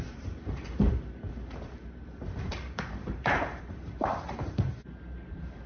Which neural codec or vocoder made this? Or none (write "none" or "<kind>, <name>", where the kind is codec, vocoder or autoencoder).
vocoder, BigVGAN v2